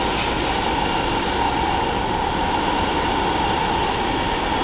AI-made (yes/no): no